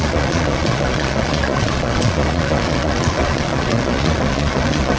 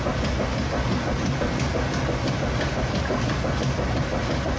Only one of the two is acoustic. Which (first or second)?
second